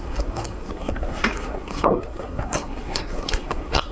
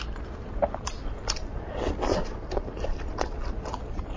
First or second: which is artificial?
first